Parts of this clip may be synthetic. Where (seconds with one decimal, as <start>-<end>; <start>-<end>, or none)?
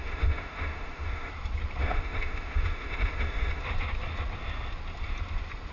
0.0-1.3; 1.8-3.6